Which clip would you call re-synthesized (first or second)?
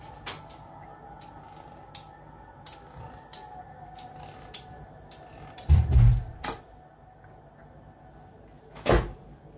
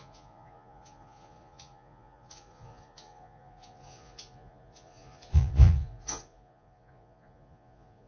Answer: second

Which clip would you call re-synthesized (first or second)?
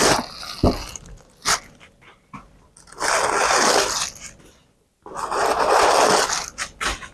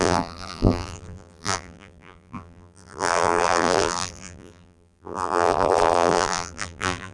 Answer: second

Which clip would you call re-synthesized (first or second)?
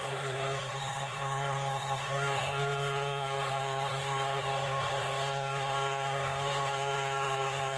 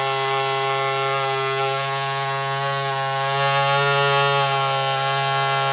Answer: first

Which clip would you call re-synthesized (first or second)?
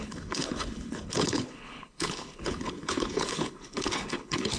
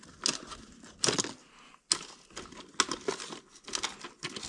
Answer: first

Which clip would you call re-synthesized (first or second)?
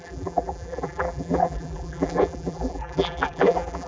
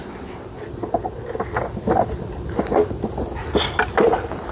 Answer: first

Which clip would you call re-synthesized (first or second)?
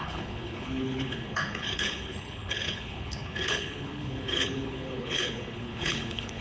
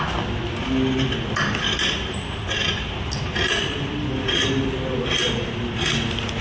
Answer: first